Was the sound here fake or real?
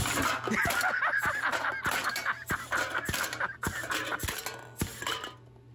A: real